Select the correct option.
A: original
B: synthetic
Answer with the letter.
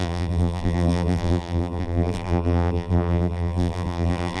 B